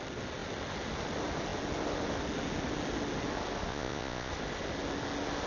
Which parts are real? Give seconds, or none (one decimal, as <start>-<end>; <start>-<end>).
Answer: 0.0-3.7; 4.3-5.5